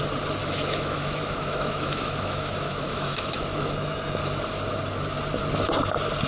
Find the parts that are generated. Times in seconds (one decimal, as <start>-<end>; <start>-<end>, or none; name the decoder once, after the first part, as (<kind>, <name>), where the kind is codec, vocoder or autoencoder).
0.4-4.2 (autoencoder, DAC-VAE)